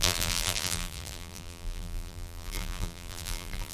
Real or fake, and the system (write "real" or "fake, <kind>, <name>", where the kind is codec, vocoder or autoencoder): fake, vocoder, BigVGAN v2